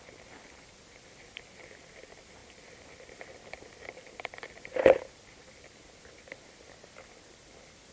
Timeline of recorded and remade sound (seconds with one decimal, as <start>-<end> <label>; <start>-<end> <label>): 0.0-2.4 recorded; 2.4-4.6 remade; 4.6-7.9 recorded